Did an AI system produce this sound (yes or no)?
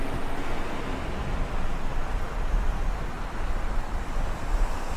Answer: no